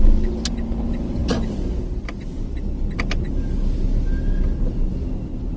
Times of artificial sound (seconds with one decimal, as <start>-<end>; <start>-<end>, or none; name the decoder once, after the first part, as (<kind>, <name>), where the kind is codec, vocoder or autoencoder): none

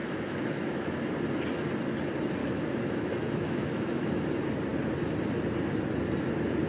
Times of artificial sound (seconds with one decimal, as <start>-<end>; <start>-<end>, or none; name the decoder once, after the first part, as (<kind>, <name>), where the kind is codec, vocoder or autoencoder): 0.0-1.0 (autoencoder, DAC-VAE); 2.4-4.1

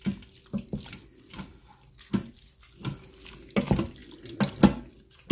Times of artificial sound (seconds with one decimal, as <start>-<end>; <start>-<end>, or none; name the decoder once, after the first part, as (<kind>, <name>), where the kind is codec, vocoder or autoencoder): 0.4-2.1 (vocoder, BigVGAN v2)

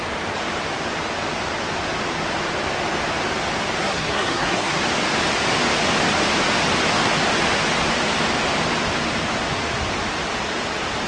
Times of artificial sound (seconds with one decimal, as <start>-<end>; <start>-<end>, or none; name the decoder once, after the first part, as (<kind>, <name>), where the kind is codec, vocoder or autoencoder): 3.8-4.8 (codec, SNAC)

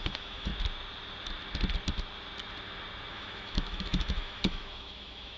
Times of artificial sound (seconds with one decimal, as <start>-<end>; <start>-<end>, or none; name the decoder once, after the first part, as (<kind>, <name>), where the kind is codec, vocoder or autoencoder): 0.0-0.5 (autoencoder, DAC-VAE); 3.1-5.4

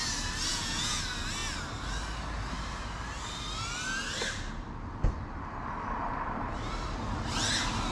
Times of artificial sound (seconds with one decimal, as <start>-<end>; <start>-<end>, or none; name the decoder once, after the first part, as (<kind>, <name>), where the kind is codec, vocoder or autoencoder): 0.5-1.0 (vocoder, Vocos)